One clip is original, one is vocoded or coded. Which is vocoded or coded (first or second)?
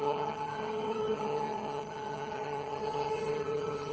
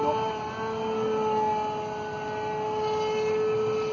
first